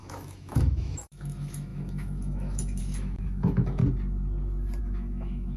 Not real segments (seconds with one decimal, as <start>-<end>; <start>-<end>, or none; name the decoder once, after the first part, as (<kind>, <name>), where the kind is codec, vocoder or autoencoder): 0.0-3.8 (autoencoder, DAC-VAE); 4.8-5.6